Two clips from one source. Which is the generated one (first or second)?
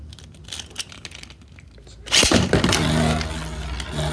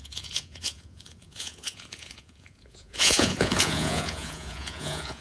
second